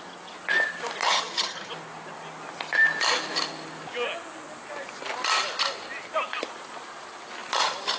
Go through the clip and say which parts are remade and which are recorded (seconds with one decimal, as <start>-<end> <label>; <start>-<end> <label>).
0.0-1.0 recorded; 1.0-1.7 remade; 1.7-8.0 recorded